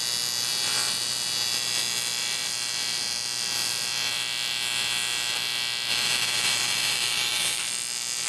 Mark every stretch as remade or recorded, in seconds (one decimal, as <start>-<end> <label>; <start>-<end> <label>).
0.0-5.9 recorded; 5.9-7.6 remade; 7.6-8.3 recorded